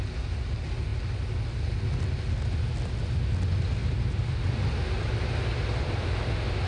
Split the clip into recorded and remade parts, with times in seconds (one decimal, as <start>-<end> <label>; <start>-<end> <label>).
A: 0.0-6.7 recorded